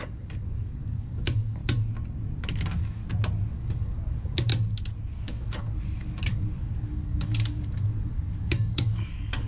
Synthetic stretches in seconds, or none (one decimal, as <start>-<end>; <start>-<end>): 0.0-1.6; 2.4-3.0; 3.5-4.5; 5.1-9.5